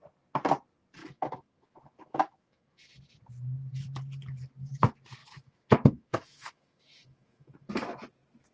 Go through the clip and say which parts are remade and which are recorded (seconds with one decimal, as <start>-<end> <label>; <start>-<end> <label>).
0.0-1.0 recorded; 1.0-2.8 remade; 2.8-5.2 recorded; 5.2-7.7 remade; 7.7-8.5 recorded